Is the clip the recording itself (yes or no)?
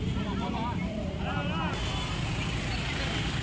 yes